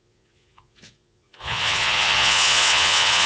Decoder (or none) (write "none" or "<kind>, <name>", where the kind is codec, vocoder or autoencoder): vocoder, Vocos